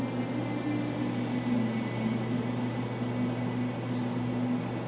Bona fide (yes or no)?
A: yes